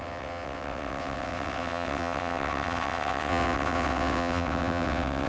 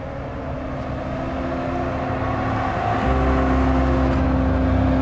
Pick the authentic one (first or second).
second